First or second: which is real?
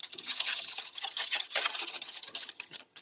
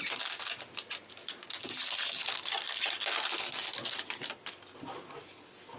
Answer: second